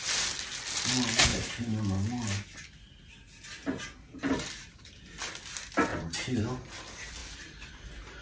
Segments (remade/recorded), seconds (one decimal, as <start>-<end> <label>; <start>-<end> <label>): 0.0-7.2 recorded; 7.2-7.7 remade; 7.7-8.2 recorded